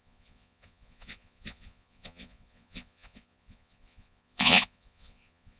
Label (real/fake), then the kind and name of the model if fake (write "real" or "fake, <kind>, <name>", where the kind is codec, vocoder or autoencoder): fake, vocoder, Vocos